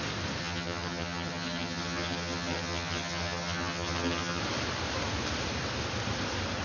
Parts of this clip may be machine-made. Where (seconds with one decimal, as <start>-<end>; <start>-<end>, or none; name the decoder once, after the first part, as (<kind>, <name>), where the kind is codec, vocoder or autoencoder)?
0.4-4.4 (vocoder, HiFi-GAN)